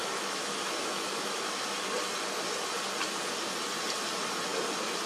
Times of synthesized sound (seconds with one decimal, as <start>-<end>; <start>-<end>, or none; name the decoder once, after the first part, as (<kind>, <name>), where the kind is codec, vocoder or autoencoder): 0.0-1.9 (autoencoder, DAC-VAE)